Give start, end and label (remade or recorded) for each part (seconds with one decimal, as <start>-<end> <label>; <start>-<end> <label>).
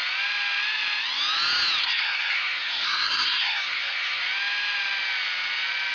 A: 0.0-1.8 recorded; 1.8-4.2 remade; 4.2-5.9 recorded